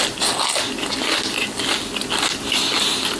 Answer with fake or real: real